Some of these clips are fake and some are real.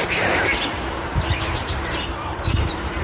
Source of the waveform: fake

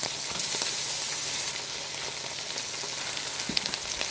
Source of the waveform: real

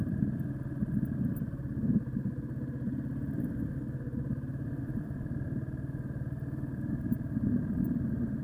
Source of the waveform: fake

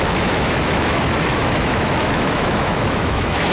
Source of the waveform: fake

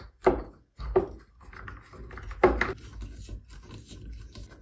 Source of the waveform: real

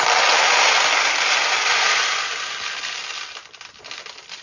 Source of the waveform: real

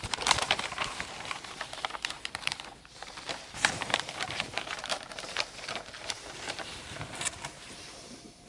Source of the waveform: fake